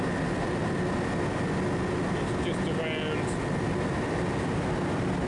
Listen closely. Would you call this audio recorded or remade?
recorded